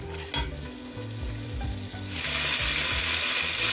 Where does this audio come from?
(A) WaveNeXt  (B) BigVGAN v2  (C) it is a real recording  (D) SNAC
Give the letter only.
C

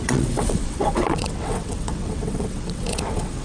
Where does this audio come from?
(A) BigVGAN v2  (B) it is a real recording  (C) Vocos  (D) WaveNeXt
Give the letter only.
D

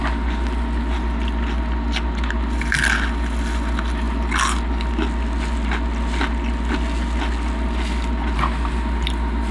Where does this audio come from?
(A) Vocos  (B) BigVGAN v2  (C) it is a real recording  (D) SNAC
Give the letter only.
C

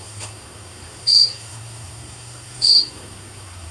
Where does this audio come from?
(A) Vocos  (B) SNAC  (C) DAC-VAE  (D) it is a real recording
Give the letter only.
B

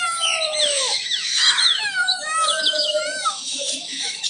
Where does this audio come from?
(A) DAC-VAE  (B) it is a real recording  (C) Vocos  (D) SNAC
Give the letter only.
A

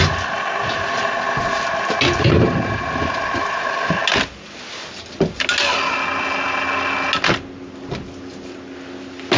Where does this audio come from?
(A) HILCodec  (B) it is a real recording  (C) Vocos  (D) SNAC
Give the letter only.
B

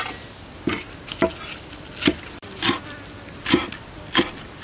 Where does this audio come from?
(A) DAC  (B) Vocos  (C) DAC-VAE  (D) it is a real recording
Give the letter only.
D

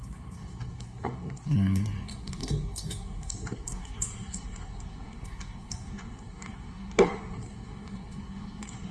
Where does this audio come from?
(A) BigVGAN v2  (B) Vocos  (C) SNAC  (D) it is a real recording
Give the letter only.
C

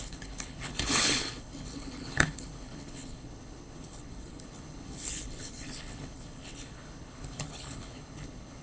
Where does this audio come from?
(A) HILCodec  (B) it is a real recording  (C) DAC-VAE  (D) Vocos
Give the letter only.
A